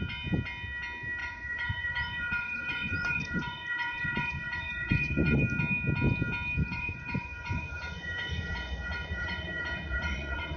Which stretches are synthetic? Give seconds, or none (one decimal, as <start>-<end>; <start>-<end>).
1.2-5.4; 6.6-10.6